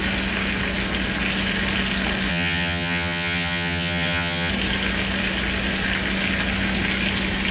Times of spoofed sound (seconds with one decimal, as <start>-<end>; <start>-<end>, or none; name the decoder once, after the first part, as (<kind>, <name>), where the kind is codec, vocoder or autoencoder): 2.3-4.5 (vocoder, HiFi-GAN)